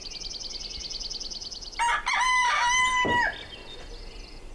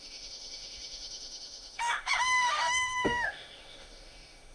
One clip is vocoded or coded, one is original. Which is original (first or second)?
first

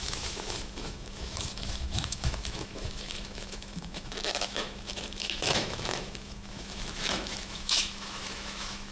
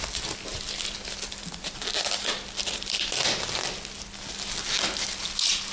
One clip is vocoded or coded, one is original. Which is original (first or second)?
second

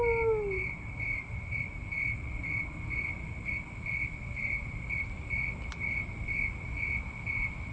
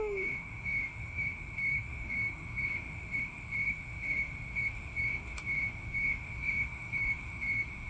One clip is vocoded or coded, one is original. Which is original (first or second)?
first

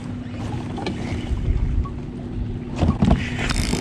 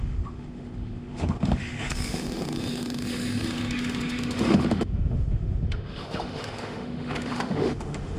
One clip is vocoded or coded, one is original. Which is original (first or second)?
first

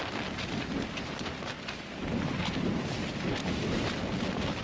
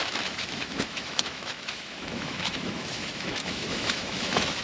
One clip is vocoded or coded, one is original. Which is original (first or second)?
first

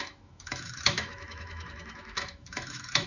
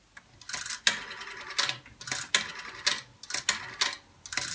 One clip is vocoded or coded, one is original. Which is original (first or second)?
second